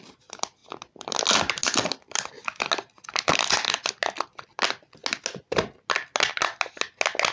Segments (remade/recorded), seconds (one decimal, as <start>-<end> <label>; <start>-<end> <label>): 0.0-7.3 recorded

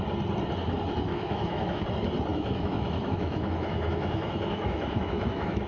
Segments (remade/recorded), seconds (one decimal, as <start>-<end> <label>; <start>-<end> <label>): 0.0-1.1 recorded; 1.1-1.8 remade; 1.8-2.3 recorded; 2.3-5.7 remade

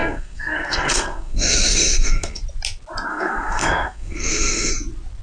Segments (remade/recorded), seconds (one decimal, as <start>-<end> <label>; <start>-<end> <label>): 0.0-2.4 remade; 2.4-3.1 recorded; 3.1-4.7 remade; 4.7-5.2 recorded

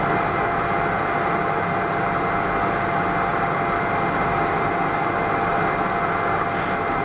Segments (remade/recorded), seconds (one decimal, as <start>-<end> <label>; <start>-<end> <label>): 0.0-7.0 recorded